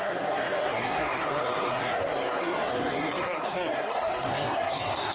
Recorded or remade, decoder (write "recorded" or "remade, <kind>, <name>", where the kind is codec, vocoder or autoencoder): remade, codec, SNAC